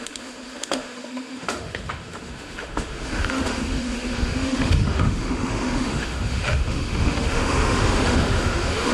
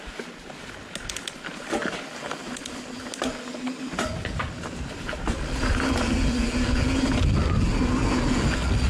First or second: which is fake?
first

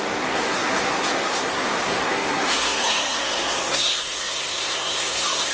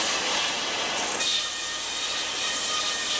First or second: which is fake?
first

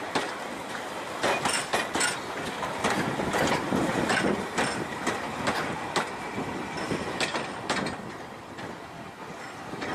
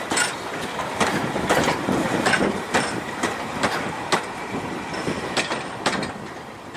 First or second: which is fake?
second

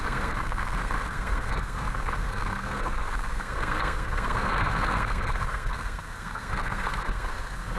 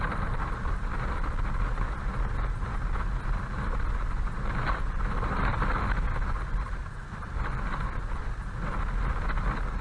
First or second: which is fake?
first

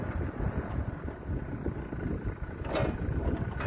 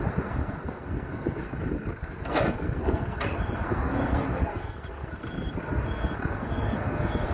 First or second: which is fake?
second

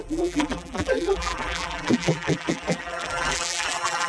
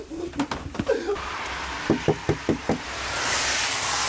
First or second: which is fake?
first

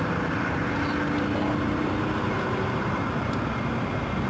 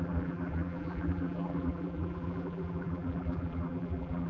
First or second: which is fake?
second